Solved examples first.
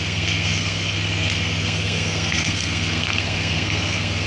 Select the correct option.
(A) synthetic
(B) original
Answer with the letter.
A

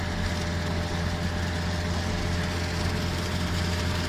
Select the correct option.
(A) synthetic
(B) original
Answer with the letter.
B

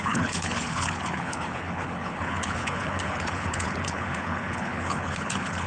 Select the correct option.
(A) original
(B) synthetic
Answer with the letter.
B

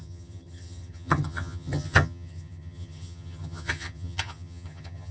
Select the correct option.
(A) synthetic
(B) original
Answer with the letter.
A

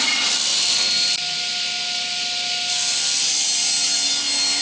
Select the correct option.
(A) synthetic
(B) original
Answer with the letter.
B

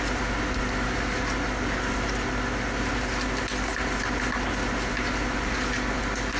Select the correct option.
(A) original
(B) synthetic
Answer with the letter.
A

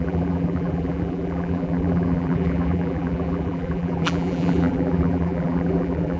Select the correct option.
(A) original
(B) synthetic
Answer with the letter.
B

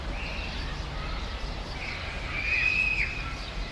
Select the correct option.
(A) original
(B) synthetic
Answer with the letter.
A